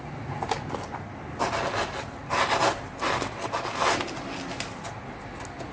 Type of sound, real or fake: real